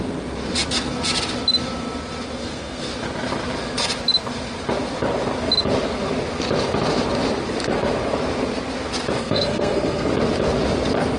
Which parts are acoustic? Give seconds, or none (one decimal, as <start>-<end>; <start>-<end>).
0.0-2.4; 2.9-9.2; 10.1-11.2